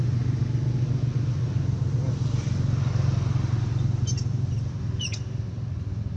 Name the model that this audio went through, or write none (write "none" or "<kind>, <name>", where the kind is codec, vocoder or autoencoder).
none